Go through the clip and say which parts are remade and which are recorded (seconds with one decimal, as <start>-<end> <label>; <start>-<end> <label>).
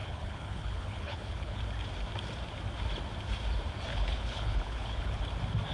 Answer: 0.0-1.6 remade; 1.6-3.9 recorded; 3.9-5.2 remade; 5.2-5.7 recorded